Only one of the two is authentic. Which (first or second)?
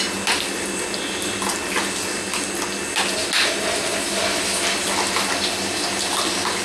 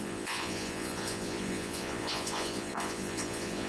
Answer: first